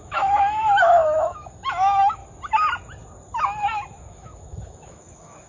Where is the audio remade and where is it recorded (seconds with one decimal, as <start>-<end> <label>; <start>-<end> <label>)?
0.0-2.2 remade; 2.2-4.0 recorded; 4.0-5.5 remade